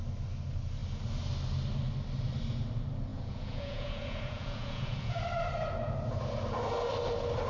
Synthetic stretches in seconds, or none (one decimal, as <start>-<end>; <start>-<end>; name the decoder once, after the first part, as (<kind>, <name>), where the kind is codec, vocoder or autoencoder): 3.1-5.2 (vocoder, Vocos)